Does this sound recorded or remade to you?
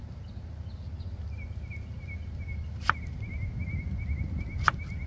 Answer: recorded